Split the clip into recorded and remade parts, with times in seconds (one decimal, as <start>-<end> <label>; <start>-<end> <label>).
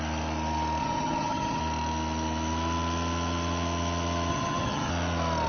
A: 0.0-0.8 recorded; 0.8-1.6 remade; 1.6-4.3 recorded; 4.3-4.9 remade; 4.9-5.5 recorded